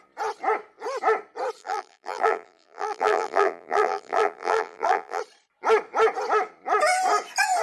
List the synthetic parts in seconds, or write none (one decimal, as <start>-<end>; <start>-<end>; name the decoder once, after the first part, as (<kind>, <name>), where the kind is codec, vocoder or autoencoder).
1.6-5.2 (vocoder, BigVGAN v2)